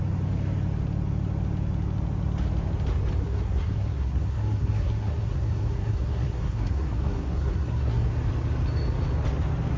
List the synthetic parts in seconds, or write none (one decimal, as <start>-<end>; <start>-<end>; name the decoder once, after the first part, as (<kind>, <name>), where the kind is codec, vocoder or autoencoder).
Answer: 3.2-8.1 (codec, SNAC)